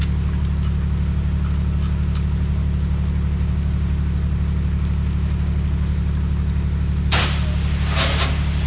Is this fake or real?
real